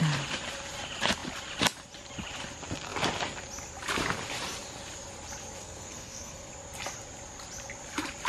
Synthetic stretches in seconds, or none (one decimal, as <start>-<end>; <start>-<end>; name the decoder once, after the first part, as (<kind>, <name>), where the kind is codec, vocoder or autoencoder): 5.6-6.5 (codec, SNAC)